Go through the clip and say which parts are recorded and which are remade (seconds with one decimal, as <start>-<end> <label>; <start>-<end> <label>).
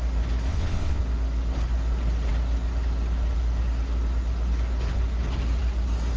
0.0-0.5 recorded; 0.5-1.0 remade; 1.0-6.2 recorded